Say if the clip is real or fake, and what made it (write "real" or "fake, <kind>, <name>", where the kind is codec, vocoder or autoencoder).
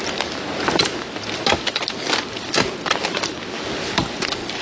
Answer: real